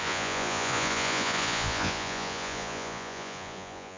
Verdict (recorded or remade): remade